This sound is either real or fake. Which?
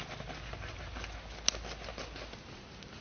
real